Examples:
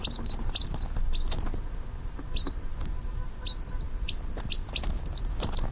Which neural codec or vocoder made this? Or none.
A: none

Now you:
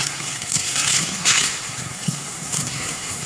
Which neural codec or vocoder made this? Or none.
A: codec, SNAC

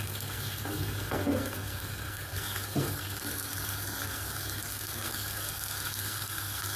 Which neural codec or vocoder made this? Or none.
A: codec, SNAC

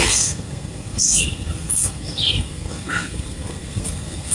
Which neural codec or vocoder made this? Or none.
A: codec, SNAC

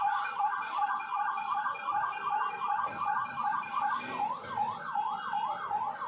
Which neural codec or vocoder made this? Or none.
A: none